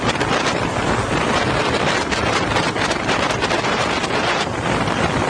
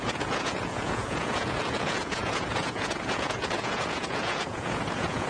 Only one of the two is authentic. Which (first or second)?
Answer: first